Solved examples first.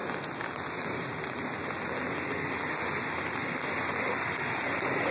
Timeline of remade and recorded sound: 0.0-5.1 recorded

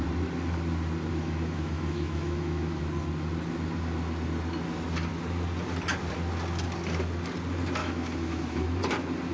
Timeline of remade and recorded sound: 0.0-1.1 recorded; 1.1-2.8 remade; 2.8-7.8 recorded; 7.8-8.8 remade; 8.8-9.3 recorded

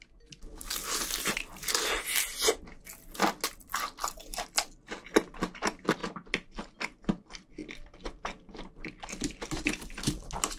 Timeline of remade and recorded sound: 0.0-10.6 recorded

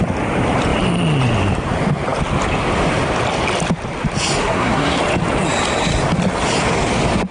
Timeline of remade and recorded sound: 0.0-4.4 recorded; 4.4-5.0 remade; 5.0-7.3 recorded

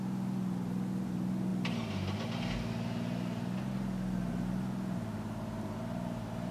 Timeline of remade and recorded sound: 0.0-6.5 recorded

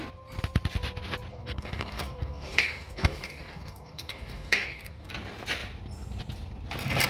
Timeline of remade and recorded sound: 0.0-1.3 recorded; 1.3-5.1 remade; 5.1-7.1 recorded